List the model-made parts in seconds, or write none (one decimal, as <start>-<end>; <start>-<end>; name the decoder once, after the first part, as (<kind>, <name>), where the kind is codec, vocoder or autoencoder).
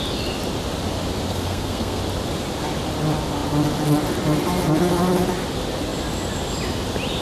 1.3-2.0 (codec, SNAC)